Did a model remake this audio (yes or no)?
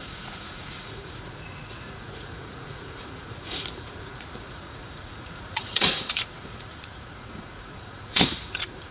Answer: yes